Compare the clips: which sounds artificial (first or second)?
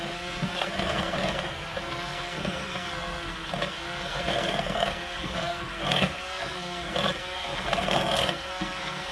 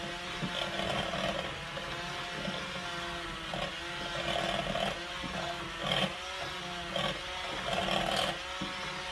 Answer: first